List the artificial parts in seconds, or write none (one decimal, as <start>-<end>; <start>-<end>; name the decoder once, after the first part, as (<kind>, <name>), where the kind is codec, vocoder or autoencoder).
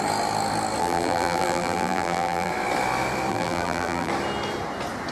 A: 0.8-2.5 (vocoder, BigVGAN v2); 3.3-4.1